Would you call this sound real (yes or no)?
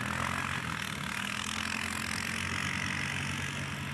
yes